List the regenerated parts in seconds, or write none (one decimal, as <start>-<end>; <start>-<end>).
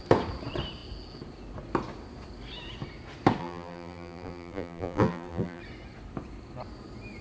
3.4-5.6